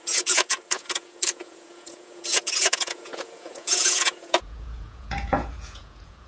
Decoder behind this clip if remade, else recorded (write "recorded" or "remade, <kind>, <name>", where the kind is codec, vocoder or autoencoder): remade, vocoder, Vocos